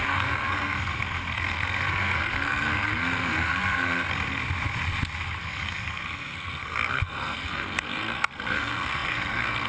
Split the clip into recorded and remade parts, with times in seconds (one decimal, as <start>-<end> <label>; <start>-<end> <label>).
0.0-4.4 remade; 4.4-5.4 recorded; 5.4-9.7 remade